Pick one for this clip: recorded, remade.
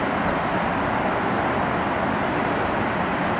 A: recorded